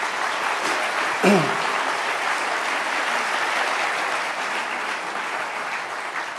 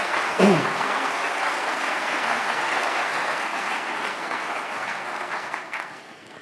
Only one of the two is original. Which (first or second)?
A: first